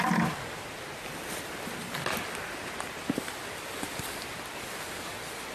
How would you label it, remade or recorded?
recorded